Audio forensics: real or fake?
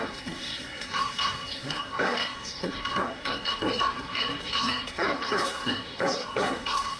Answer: fake